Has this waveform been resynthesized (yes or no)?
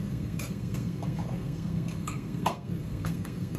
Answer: yes